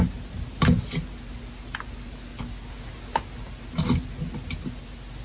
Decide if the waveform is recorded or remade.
recorded